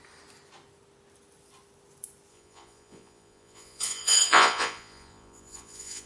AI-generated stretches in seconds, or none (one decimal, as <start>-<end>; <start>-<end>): 2.3-6.1